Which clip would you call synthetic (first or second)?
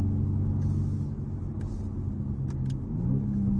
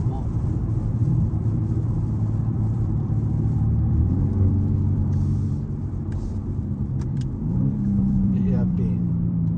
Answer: second